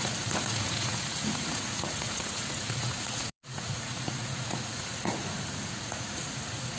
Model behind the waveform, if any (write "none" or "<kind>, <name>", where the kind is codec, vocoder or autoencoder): vocoder, Vocos